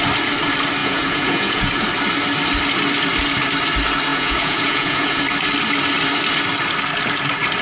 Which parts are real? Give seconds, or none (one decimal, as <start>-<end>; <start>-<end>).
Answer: 0.0-0.8; 1.7-4.1; 5.2-7.6